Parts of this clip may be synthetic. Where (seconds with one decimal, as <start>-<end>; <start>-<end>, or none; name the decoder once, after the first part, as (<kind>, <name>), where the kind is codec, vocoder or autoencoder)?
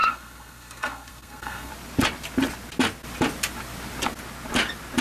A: 0.0-1.7 (codec, SNAC)